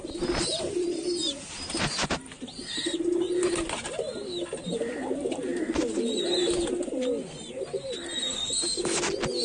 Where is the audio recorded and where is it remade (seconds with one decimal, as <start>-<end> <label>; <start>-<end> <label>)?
0.0-9.4 recorded